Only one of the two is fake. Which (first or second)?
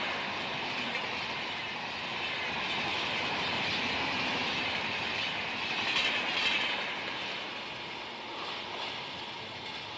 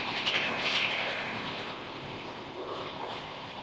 second